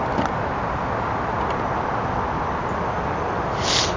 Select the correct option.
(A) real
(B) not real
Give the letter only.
A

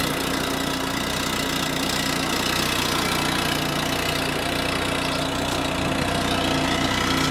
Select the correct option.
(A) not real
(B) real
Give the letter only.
B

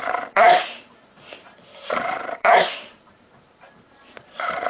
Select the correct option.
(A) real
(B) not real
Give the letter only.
B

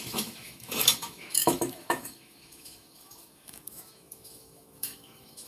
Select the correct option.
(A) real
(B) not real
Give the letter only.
B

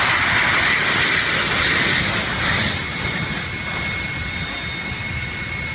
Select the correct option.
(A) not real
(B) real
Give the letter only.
B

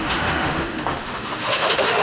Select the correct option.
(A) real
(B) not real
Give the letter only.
B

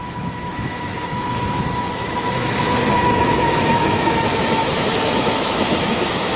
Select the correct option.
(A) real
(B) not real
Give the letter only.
B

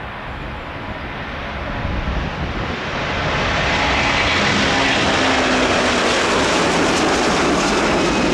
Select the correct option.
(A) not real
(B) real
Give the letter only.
B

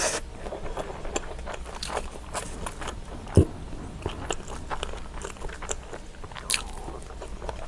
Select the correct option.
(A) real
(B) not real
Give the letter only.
A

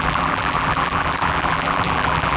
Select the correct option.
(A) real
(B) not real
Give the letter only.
B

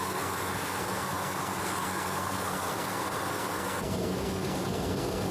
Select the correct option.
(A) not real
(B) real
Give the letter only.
A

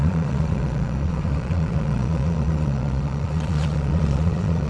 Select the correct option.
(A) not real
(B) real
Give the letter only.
A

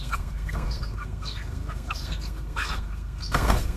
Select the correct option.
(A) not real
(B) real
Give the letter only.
A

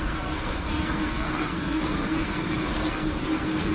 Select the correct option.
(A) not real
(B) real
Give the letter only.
A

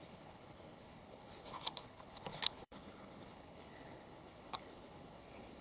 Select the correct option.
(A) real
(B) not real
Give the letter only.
B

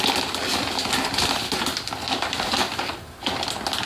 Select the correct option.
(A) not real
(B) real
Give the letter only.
B